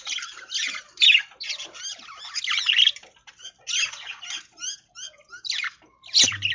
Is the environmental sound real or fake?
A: real